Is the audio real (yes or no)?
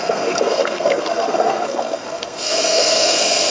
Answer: no